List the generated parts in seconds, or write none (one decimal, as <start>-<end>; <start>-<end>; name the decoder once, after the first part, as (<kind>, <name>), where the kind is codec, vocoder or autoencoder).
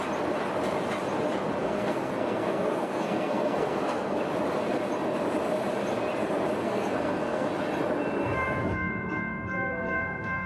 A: 1.6-4.2 (codec, SNAC); 6.6-7.5; 8.2-10.5